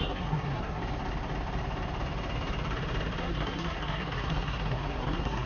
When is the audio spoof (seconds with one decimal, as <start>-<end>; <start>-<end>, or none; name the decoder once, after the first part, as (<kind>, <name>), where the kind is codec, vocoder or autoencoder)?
0.0-0.8 (codec, SNAC); 3.2-5.5